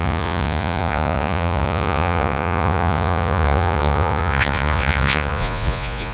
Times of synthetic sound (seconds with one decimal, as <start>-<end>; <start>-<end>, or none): 0.0-6.1